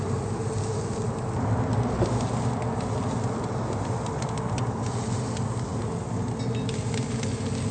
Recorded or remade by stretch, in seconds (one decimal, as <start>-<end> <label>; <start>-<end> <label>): 0.0-7.7 recorded